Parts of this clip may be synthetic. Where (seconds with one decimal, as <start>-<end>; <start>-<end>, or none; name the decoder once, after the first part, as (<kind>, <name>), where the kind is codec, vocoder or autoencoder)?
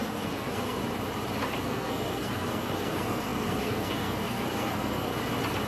0.0-0.8 (codec, SNAC); 1.6-5.1